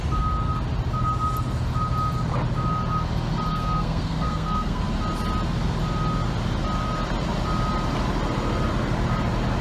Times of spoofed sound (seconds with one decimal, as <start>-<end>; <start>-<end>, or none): 3.5-4.8